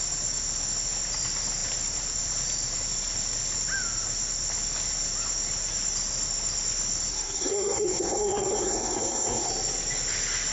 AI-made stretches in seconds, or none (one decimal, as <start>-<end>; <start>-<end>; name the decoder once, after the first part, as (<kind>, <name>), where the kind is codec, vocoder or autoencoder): 7.1-9.5 (codec, SNAC)